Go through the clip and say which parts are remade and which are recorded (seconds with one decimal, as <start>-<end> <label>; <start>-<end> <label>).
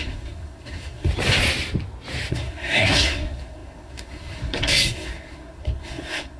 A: 0.0-1.1 remade; 1.1-2.3 recorded; 2.3-6.4 remade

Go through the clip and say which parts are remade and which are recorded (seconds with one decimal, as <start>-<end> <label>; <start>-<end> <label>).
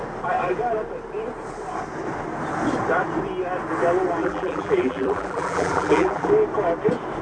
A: 0.0-4.2 recorded; 4.2-6.3 remade; 6.3-7.2 recorded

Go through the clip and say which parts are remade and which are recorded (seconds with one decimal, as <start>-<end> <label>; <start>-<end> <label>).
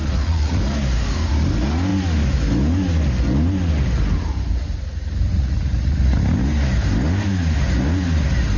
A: 0.0-0.6 remade; 0.6-5.3 recorded; 5.3-6.2 remade; 6.2-8.6 recorded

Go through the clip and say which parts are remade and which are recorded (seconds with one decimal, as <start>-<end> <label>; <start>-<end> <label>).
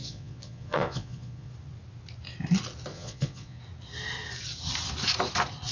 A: 0.0-1.5 remade; 1.5-2.9 recorded; 2.9-3.6 remade; 3.6-5.7 recorded